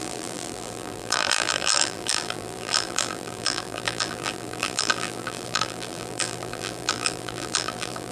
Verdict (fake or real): fake